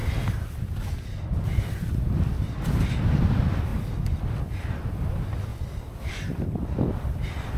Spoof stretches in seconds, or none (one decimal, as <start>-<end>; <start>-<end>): 2.5-3.7; 4.6-5.5; 6.1-7.6